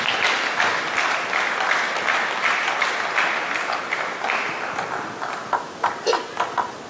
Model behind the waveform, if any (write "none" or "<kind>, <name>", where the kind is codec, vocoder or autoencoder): none